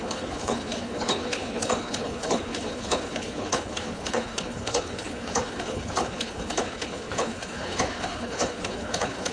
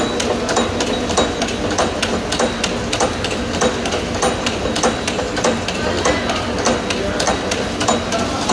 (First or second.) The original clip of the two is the second